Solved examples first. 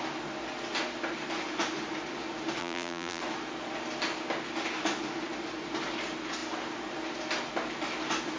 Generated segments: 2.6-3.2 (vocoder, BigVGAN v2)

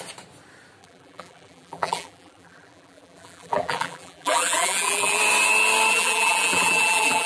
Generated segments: 0.8-5.2 (vocoder, BigVGAN v2); 5.9-7.3

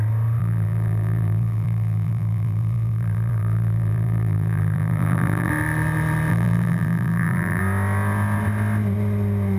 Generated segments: 0.4-5.5 (vocoder, BigVGAN v2); 6.3-7.6

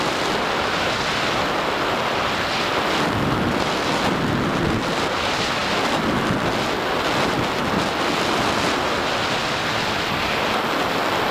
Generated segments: none

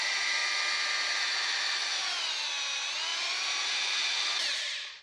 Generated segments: 3.1-5.0 (vocoder, BigVGAN v2)

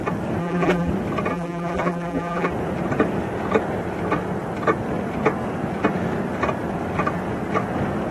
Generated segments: 0.4-0.9 (vocoder, BigVGAN v2); 1.3-2.5

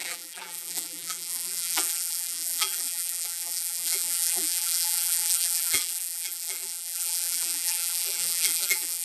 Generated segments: 0.0-9.0 (vocoder, BigVGAN v2)

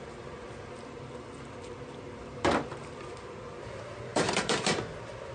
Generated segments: 0.0-5.3 (vocoder, BigVGAN v2)